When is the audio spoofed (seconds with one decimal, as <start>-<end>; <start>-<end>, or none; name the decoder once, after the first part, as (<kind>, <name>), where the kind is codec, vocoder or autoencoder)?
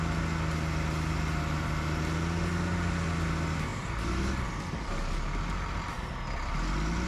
none